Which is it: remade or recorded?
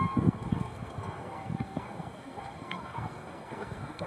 remade